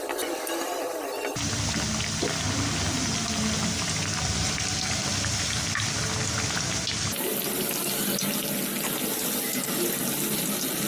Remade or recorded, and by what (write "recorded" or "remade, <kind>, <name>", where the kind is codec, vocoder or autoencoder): recorded